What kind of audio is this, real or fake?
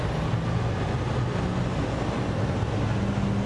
real